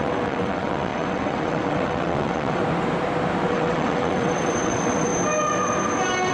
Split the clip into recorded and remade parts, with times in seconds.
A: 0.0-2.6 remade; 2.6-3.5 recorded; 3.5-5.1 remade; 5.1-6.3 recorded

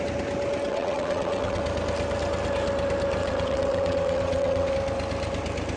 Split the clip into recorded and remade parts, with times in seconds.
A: 0.0-0.7 recorded; 0.7-1.6 remade; 1.6-3.2 recorded; 3.2-4.7 remade; 4.7-5.8 recorded

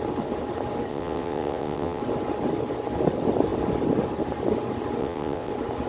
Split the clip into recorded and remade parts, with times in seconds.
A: 0.0-0.9 recorded; 0.9-2.0 remade; 2.0-5.0 recorded; 5.0-5.5 remade; 5.5-5.9 recorded

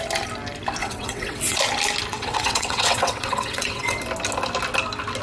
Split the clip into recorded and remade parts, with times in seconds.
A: 0.0-0.8 recorded; 0.8-1.6 remade; 1.6-2.1 recorded; 2.1-4.0 remade; 4.0-5.2 recorded

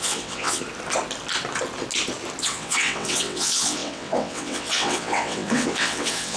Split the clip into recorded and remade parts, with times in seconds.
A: 0.0-0.6 remade; 0.6-2.4 recorded; 2.4-6.4 remade